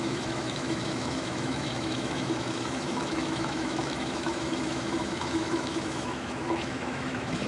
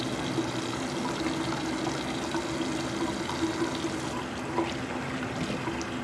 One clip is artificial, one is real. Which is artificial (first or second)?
first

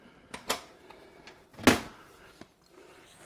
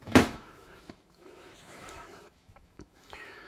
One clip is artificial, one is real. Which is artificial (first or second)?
second